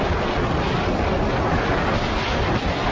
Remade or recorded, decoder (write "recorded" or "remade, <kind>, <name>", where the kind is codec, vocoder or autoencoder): recorded